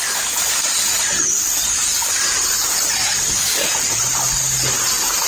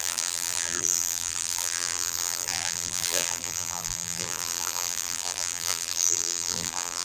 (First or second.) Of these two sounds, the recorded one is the first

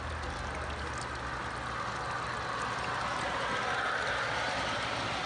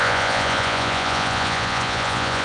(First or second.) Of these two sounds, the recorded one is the first